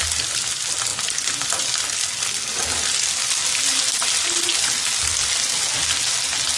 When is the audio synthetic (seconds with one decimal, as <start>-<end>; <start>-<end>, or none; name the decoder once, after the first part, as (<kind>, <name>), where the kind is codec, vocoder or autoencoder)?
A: none